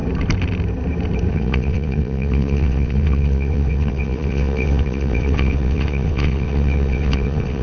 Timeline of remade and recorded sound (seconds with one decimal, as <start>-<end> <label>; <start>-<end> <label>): 0.0-1.3 recorded; 1.3-7.6 remade